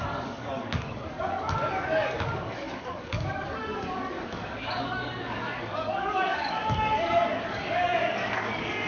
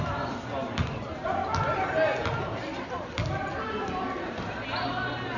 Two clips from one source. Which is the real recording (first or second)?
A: second